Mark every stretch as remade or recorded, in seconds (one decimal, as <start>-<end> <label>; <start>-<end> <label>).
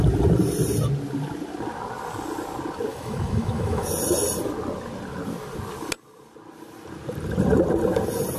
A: 0.0-2.9 recorded; 2.9-3.9 remade; 3.9-8.4 recorded